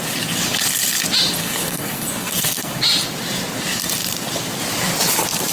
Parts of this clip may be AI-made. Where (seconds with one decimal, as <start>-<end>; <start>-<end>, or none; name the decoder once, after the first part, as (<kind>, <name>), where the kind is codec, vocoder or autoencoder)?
1.4-2.8 (codec, SNAC)